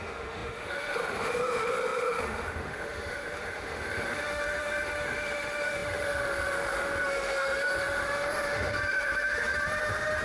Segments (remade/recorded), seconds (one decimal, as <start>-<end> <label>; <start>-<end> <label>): 0.0-10.2 remade